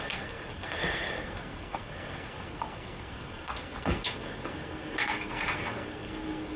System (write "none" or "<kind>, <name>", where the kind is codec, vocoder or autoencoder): codec, SNAC